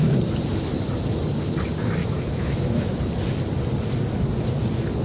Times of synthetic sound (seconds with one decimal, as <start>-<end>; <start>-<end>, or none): 2.0-3.0